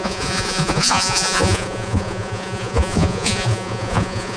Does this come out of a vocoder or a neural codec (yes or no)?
yes